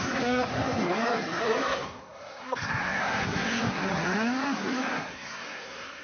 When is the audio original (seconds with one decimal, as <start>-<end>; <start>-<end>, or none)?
none